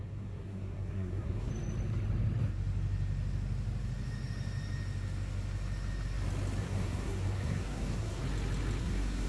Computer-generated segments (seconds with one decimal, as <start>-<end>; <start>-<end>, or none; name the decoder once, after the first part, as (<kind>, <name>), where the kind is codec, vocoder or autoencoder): 0.0-1.5 (codec, SNAC); 6.6-8.2; 8.8-9.3